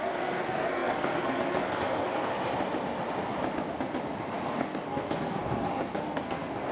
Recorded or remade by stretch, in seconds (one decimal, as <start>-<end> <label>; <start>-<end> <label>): 0.0-2.3 remade; 2.3-4.5 recorded; 4.5-6.7 remade